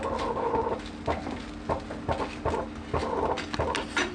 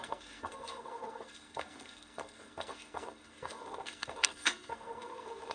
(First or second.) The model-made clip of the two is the second